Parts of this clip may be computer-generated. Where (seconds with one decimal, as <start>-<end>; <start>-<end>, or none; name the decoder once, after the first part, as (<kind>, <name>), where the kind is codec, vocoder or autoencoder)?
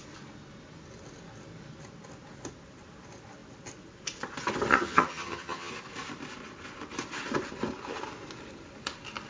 4.7-5.7 (vocoder, HiFi-GAN)